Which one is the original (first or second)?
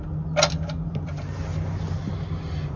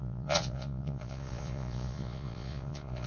first